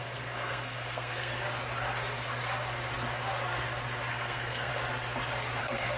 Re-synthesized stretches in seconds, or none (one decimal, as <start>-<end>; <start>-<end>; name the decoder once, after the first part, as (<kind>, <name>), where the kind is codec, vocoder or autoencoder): 0.0-1.3 (codec, SNAC); 4.1-4.7; 5.6-6.0

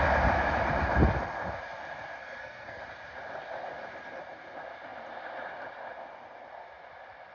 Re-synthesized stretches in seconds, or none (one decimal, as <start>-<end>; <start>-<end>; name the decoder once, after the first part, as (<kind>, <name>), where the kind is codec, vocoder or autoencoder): 2.2-2.8 (codec, SNAC)

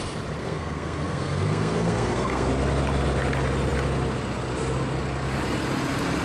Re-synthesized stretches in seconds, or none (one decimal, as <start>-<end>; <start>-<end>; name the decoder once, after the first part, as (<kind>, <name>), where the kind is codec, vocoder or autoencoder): 0.4-2.5 (codec, SNAC)

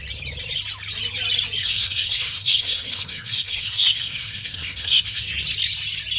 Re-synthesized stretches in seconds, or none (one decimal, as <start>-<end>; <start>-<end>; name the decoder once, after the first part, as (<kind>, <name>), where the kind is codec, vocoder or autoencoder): 1.6-5.3 (codec, SNAC)

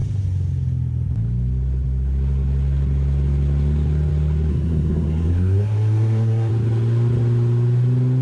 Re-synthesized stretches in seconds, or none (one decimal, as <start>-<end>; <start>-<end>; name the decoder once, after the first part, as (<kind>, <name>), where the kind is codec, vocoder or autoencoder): 4.5-6.5 (codec, SNAC)

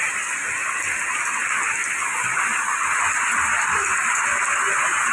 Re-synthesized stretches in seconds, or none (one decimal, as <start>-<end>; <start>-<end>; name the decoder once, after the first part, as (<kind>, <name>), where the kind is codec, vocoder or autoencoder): none

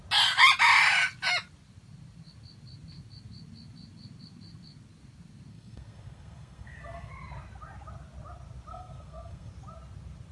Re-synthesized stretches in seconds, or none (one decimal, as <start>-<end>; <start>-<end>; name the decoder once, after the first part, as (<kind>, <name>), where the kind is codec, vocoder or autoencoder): 5.5-7.1 (codec, SNAC); 8.7-9.5

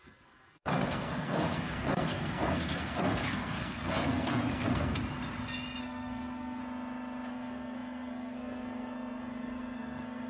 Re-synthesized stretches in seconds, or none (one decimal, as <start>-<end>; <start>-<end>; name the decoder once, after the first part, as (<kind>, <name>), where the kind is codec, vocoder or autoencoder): 0.0-4.9 (codec, SNAC); 5.8-6.6; 7.3-10.3